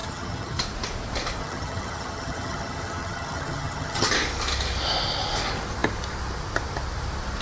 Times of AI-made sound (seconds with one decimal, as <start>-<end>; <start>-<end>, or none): 0.0-0.6; 1.4-4.1